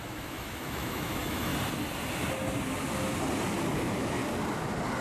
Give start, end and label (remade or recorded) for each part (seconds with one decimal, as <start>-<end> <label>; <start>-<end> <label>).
0.0-1.5 remade; 1.5-3.8 recorded; 3.8-4.2 remade; 4.2-5.0 recorded